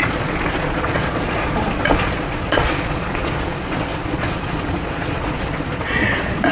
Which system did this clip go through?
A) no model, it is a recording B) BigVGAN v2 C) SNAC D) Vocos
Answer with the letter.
D